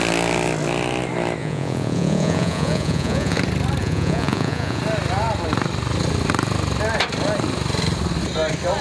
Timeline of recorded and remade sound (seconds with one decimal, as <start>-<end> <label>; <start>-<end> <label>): 0.0-1.4 recorded; 1.4-3.4 remade; 3.4-3.8 recorded; 3.8-4.8 remade; 4.8-8.8 recorded